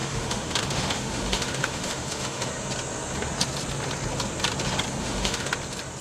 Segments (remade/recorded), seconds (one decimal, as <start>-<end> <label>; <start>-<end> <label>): 0.0-2.5 remade; 2.5-5.0 recorded; 5.0-5.5 remade; 5.5-6.0 recorded